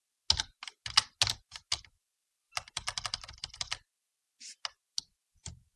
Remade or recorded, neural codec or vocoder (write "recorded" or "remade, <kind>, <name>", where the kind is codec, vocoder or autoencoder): recorded